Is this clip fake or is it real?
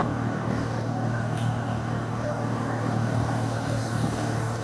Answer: fake